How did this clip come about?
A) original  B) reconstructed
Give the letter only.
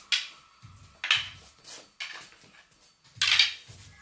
A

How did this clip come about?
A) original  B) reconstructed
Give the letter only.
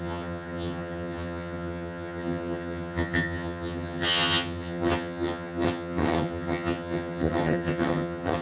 B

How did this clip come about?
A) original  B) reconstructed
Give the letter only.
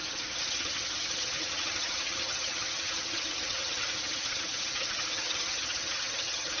B